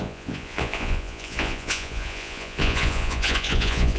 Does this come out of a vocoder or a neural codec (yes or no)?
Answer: yes